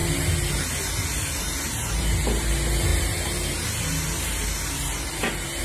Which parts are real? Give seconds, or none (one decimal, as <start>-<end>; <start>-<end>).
0.0-5.6

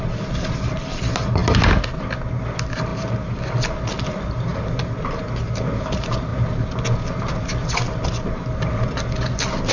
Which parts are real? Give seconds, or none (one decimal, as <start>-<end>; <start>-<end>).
0.0-9.7

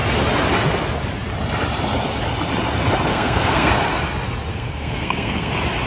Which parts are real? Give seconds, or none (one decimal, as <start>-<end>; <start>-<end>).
0.0-3.1; 3.7-4.5; 5.5-5.9

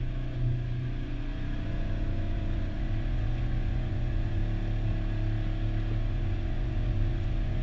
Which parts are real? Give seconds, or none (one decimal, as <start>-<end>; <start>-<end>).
4.4-6.0

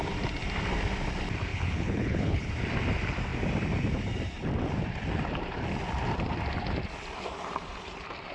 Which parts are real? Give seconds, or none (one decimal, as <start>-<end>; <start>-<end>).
0.0-1.5; 2.5-8.3

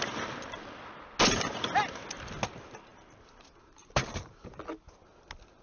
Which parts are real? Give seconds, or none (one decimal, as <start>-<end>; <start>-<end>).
0.0-2.9; 4.6-5.6